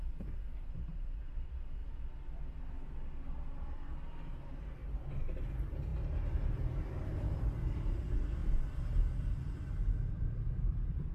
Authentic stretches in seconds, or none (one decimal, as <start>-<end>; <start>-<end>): 1.8-4.3; 4.8-5.4; 8.4-9.0